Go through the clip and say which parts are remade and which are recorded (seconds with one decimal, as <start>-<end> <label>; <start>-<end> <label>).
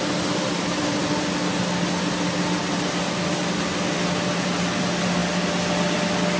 0.0-6.4 recorded